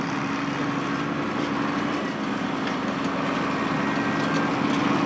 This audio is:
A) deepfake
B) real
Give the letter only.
B